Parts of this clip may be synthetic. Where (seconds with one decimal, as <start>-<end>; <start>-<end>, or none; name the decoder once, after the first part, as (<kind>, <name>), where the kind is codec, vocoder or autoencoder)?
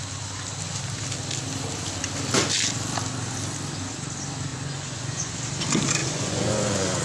4.5-5.3 (vocoder, Vocos); 6.0-7.0